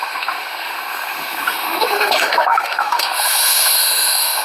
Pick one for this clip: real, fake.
fake